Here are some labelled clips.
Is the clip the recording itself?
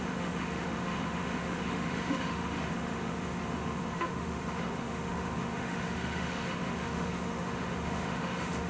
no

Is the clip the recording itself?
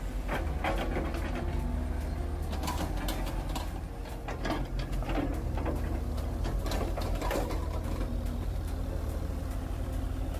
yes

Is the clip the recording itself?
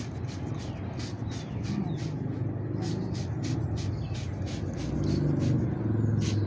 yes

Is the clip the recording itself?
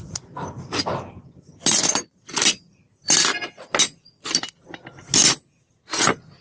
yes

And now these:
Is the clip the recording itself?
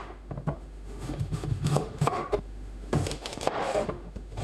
no